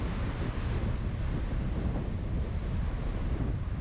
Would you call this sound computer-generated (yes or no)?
no